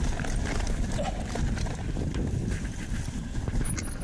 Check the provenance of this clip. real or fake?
real